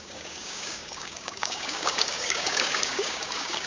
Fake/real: fake